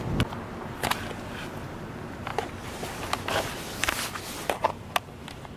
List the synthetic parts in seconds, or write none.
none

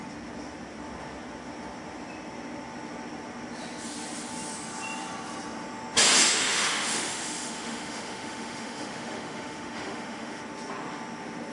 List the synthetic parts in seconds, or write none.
6.3-10.4 (autoencoder, DAC-VAE)

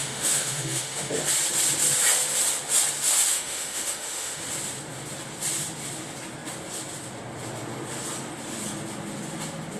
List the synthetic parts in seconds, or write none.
0.0-1.1 (autoencoder, DAC-VAE); 3.3-4.4

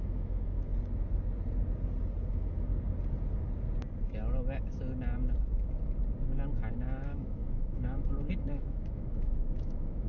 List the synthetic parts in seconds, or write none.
0.0-0.7 (autoencoder, DAC-VAE); 2.3-2.7; 6.7-10.1

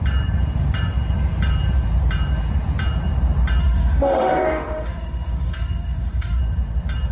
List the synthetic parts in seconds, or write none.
3.6-6.4 (autoencoder, DAC-VAE)